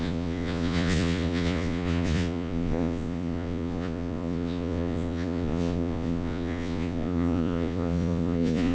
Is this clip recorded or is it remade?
remade